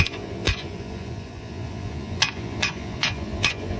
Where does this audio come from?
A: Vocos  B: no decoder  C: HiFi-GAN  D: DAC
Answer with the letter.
A